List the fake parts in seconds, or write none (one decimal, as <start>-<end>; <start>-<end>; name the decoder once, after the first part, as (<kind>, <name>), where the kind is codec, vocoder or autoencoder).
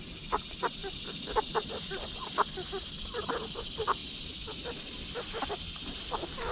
0.0-0.8 (vocoder, BigVGAN v2); 3.3-4.0; 5.4-6.5